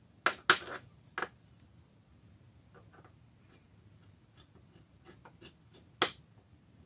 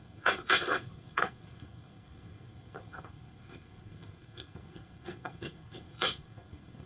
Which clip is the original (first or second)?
first